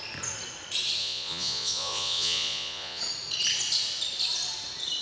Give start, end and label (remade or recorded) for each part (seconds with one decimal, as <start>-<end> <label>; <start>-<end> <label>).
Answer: 0.0-1.0 recorded; 1.0-3.0 remade; 3.0-5.0 recorded